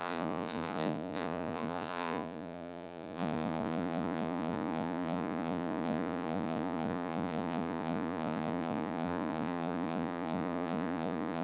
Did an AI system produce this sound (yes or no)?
yes